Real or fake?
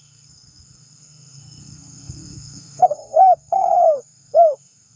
fake